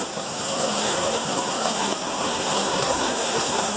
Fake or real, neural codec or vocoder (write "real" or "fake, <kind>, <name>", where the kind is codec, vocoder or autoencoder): fake, codec, SNAC